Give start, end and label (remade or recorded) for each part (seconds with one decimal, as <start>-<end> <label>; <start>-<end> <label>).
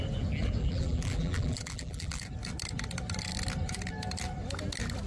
0.0-0.6 recorded; 0.6-2.2 remade; 2.2-5.1 recorded